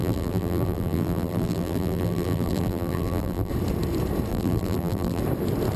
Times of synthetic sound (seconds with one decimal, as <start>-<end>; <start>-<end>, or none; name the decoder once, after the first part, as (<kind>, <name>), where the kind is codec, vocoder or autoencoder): 0.0-3.5 (vocoder, BigVGAN v2); 4.3-5.2